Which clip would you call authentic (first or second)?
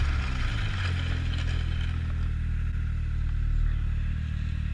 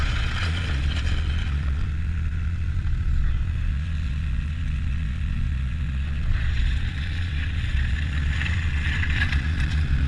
first